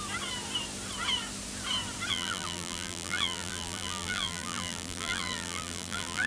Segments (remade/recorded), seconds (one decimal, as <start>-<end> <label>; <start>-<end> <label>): 0.0-2.1 recorded; 2.1-6.3 remade